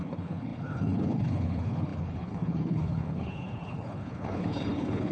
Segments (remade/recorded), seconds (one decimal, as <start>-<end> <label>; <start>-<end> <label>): 0.0-5.1 remade